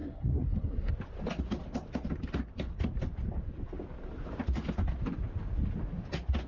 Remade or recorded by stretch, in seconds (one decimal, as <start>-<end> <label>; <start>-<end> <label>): 0.0-0.9 remade; 0.9-6.5 recorded